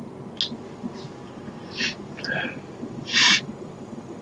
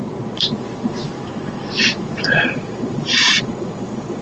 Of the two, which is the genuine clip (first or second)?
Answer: first